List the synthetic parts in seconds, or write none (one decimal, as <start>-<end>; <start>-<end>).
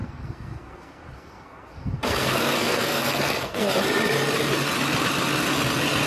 0.0-3.7